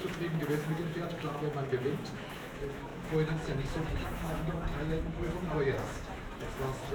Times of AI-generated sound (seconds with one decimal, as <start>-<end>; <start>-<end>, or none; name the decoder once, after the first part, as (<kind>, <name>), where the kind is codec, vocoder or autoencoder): 0.0-6.9 (autoencoder, DAC-VAE)